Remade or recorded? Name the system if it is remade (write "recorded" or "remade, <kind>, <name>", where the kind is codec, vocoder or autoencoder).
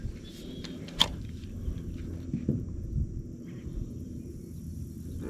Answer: remade, vocoder, BigVGAN v2